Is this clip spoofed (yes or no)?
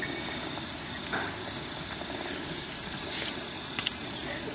no